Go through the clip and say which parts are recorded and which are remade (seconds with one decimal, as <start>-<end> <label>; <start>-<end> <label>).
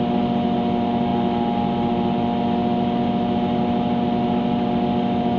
0.0-5.4 recorded